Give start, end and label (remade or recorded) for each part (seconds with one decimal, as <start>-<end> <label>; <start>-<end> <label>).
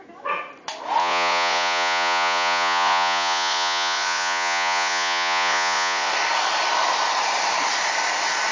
0.0-1.0 recorded; 1.0-6.1 remade; 6.1-8.5 recorded